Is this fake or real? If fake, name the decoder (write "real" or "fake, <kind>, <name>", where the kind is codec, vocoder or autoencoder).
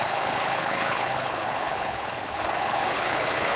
fake, codec, HILCodec